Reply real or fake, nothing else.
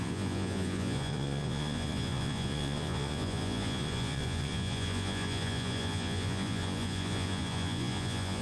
fake